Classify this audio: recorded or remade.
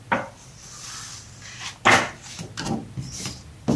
recorded